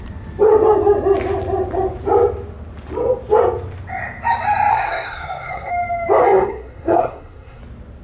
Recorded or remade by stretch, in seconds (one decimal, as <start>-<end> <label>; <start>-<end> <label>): 0.0-4.7 recorded; 4.7-5.7 remade; 5.7-6.2 recorded; 6.2-7.6 remade; 7.6-8.0 recorded